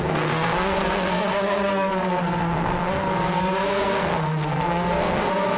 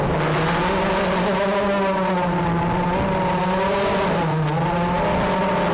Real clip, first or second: second